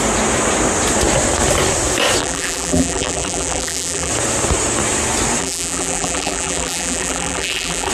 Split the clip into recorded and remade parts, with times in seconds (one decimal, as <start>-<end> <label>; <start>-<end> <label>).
0.0-2.2 recorded; 2.2-4.1 remade; 4.1-5.4 recorded; 5.4-7.9 remade